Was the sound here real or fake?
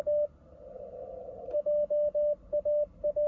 real